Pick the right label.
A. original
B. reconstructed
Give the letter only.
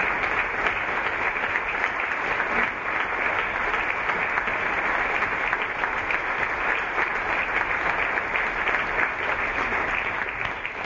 A